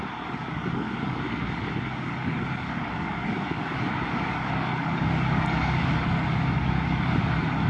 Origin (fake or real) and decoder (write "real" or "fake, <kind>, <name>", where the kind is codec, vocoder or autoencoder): fake, codec, DAC